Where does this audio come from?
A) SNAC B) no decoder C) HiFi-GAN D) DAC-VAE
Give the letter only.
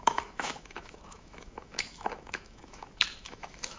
D